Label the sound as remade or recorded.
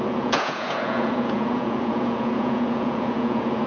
remade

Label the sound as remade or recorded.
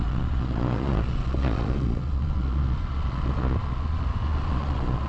remade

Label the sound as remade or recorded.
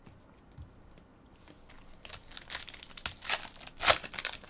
recorded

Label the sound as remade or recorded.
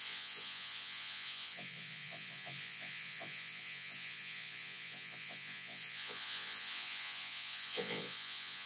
remade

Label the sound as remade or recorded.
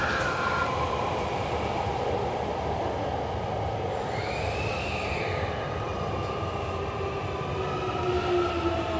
recorded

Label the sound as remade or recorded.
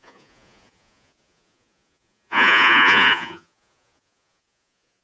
remade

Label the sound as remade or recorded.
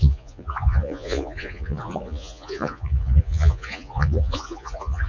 remade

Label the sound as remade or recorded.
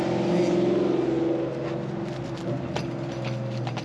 recorded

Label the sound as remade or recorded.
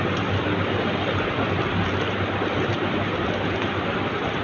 recorded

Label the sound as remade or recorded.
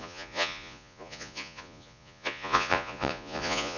remade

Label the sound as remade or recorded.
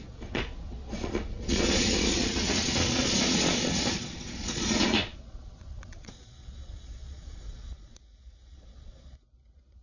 remade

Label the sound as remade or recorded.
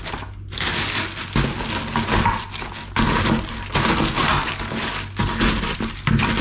recorded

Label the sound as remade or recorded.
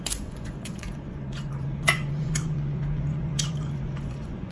remade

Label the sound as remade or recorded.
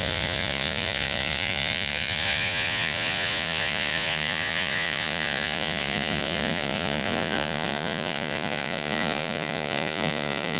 remade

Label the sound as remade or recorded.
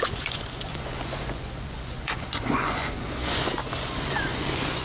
remade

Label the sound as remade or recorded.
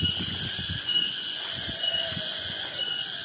remade